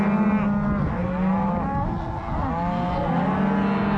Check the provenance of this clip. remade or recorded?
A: recorded